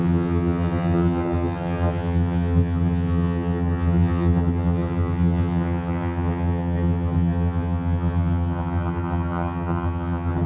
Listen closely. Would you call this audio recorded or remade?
remade